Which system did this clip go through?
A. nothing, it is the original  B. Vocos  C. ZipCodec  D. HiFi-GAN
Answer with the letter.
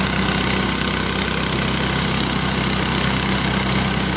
A